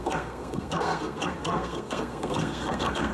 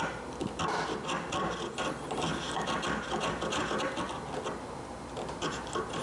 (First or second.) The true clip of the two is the second